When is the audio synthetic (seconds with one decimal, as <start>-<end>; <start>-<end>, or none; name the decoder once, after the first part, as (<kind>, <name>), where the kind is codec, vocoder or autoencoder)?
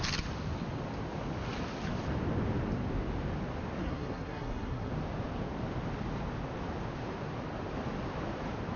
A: 3.8-4.9 (codec, SNAC)